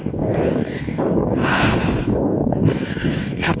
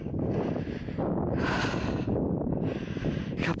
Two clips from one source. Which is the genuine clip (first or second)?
second